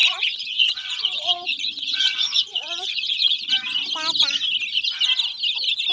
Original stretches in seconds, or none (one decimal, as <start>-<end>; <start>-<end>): 3.5-5.9